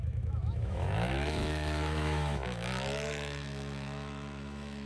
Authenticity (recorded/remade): remade